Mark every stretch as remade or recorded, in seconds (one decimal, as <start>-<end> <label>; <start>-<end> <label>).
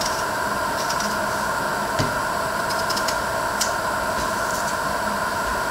0.0-5.7 recorded